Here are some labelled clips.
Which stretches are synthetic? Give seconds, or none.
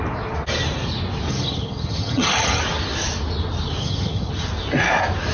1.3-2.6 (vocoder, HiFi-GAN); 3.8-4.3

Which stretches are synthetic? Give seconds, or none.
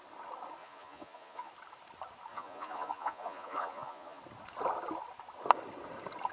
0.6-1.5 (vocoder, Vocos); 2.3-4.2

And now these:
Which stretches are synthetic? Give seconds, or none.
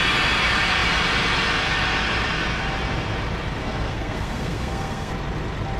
3.6-5.1 (codec, SNAC)